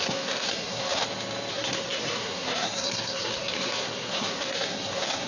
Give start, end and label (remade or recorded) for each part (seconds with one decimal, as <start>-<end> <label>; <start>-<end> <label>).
0.0-1.0 remade; 1.0-1.5 recorded; 1.5-5.3 remade